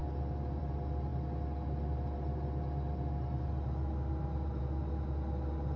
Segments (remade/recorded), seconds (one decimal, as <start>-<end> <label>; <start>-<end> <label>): 0.0-5.8 recorded